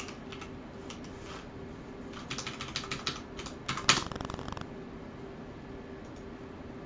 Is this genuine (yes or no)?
yes